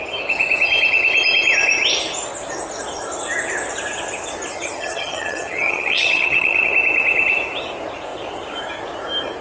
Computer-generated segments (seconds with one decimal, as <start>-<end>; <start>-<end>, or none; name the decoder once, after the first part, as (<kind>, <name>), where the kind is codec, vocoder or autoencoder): 4.5-6.7 (vocoder, HiFi-GAN)